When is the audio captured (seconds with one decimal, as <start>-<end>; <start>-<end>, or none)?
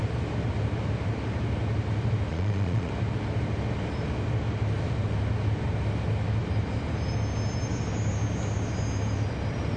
0.0-2.3; 2.9-9.8